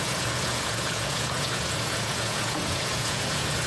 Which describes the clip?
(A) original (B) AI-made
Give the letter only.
B